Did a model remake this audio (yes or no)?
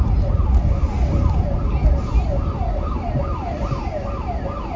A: no